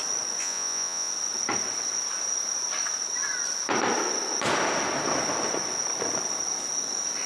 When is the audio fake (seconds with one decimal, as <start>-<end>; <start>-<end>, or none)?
0.4-1.1